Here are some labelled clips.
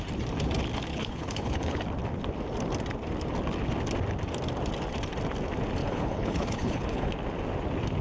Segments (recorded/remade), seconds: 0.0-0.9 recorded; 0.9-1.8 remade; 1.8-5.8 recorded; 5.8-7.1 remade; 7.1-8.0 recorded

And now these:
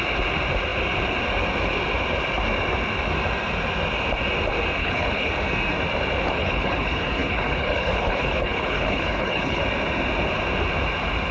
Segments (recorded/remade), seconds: 0.0-4.8 recorded; 4.8-5.3 remade; 5.3-6.4 recorded; 6.4-9.6 remade; 9.6-11.3 recorded

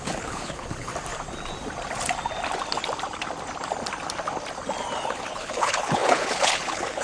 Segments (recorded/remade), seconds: 0.0-0.9 remade; 0.9-5.1 recorded; 5.1-7.0 remade

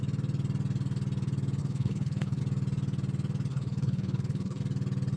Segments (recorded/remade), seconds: 0.0-1.6 recorded; 1.6-2.4 remade; 2.4-3.5 recorded; 3.5-4.6 remade; 4.6-5.2 recorded

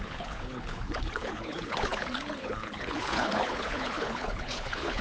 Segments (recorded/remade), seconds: 0.0-5.0 remade

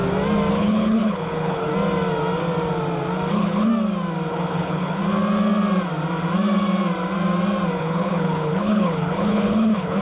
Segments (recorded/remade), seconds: 0.0-0.5 recorded; 0.5-1.7 remade; 1.7-3.3 recorded; 3.3-3.7 remade; 3.7-4.3 recorded; 4.3-5.0 remade; 5.0-7.8 recorded; 7.8-10.0 remade